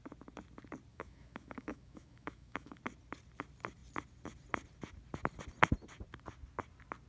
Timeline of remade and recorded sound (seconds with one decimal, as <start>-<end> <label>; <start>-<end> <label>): 0.0-0.9 recorded; 0.9-2.8 remade; 2.8-7.1 recorded

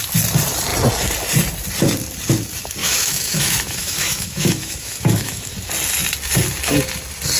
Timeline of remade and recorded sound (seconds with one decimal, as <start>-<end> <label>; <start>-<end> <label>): 0.0-2.8 recorded; 2.8-5.5 remade; 5.5-7.4 recorded

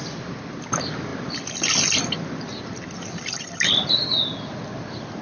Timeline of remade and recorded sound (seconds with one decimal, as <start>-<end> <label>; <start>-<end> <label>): 0.0-5.2 recorded

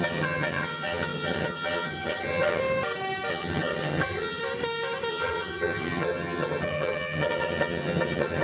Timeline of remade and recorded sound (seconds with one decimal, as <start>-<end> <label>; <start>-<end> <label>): 0.0-2.6 remade; 2.6-3.3 recorded; 3.3-4.4 remade; 4.4-5.1 recorded; 5.1-8.4 remade

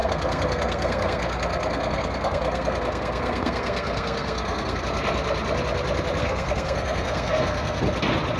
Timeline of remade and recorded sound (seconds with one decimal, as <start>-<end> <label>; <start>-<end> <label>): 0.0-4.8 remade; 4.8-6.2 recorded; 6.2-7.8 remade; 7.8-8.4 recorded